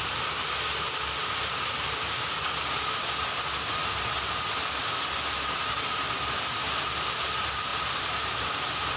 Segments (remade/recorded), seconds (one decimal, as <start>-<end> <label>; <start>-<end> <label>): 0.0-9.0 recorded